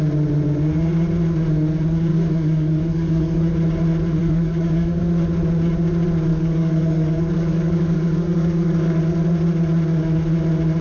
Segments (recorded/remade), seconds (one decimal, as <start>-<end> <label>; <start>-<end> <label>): 0.0-2.1 recorded; 2.1-3.5 remade; 3.5-4.2 recorded; 4.2-5.0 remade; 5.0-6.3 recorded; 6.3-9.0 remade; 9.0-10.8 recorded